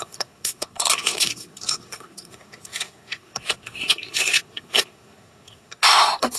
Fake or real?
fake